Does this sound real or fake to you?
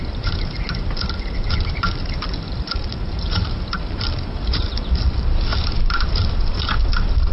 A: real